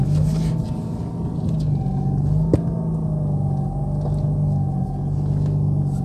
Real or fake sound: real